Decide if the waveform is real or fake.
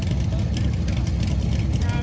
real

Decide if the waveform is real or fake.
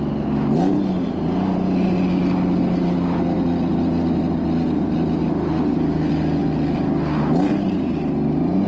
real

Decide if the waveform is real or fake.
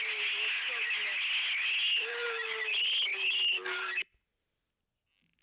real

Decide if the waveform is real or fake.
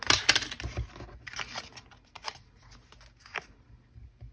real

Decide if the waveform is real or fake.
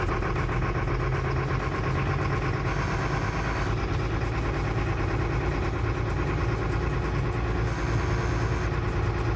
real